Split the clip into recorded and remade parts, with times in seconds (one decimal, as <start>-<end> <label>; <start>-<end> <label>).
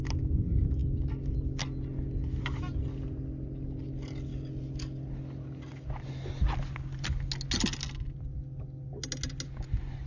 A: 0.0-10.1 recorded